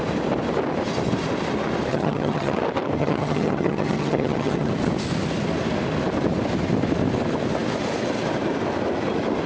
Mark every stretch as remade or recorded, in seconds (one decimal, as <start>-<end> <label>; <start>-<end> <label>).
0.0-1.9 recorded; 1.9-2.6 remade; 2.6-3.0 recorded; 3.0-4.7 remade; 4.7-9.5 recorded